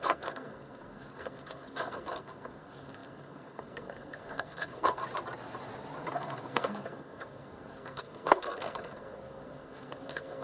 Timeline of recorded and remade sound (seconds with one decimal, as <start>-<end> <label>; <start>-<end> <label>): 0.0-5.0 remade; 5.0-6.1 recorded; 6.1-10.4 remade